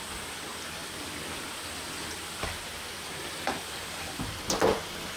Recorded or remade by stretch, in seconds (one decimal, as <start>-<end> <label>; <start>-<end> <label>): 0.0-5.2 recorded